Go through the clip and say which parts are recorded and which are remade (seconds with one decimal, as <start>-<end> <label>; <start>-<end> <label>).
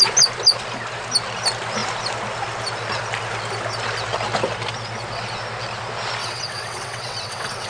0.0-6.2 recorded; 6.2-7.7 remade